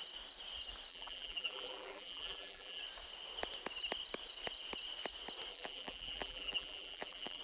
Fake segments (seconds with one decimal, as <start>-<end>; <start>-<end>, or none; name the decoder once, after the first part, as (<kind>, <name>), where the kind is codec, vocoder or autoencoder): 0.9-2.8 (vocoder, BigVGAN v2); 5.5-7.4